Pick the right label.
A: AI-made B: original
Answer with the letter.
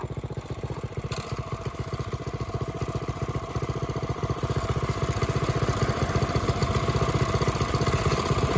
B